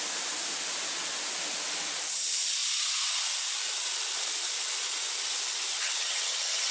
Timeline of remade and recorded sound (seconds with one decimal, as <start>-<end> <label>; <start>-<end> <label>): 0.0-5.7 recorded; 5.7-6.7 remade